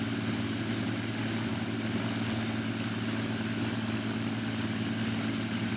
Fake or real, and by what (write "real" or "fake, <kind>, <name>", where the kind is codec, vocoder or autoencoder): real